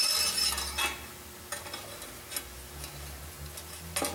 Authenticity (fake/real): real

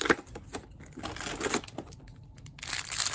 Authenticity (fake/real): real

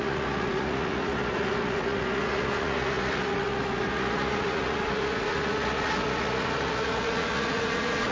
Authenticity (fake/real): fake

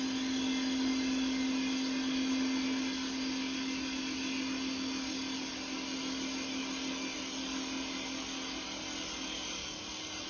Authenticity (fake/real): real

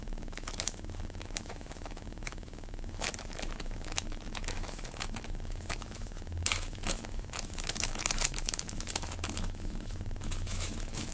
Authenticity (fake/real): fake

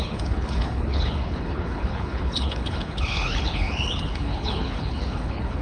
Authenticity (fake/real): fake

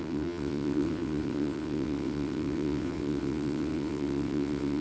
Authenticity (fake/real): fake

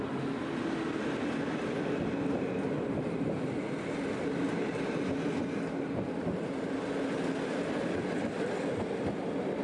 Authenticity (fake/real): real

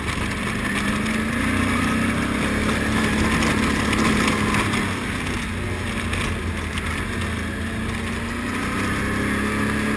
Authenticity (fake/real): real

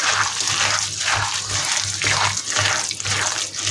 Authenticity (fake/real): real